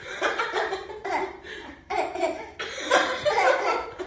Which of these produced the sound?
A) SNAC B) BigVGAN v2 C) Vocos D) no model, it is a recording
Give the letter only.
B